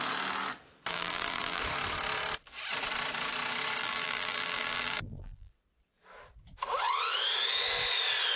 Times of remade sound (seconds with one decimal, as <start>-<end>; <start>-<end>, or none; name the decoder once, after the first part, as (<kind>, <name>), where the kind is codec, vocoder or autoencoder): 0.9-1.6 (vocoder, BigVGAN v2); 3.8-5.5